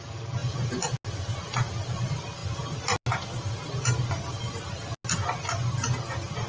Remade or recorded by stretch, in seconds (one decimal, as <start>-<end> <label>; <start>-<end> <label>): 0.0-6.5 recorded